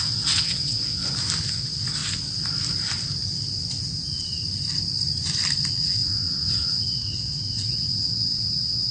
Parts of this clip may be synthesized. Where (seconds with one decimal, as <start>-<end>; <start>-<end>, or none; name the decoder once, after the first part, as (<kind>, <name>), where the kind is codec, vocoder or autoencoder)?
0.0-1.0 (vocoder, WaveNeXt); 1.5-2.0; 5.7-8.9

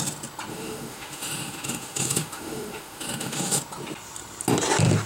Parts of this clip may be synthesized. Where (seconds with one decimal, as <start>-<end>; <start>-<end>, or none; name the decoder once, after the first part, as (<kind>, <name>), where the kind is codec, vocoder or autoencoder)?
0.5-3.6 (autoencoder, DAC-VAE)

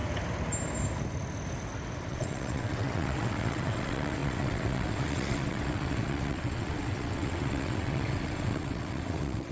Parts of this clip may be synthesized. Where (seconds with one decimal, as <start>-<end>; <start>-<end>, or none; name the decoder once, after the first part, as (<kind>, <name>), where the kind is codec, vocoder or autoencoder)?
2.1-9.5 (vocoder, WaveNeXt)

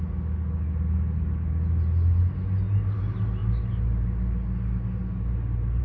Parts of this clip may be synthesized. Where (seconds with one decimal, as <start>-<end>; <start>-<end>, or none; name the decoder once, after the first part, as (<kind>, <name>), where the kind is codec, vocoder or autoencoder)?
none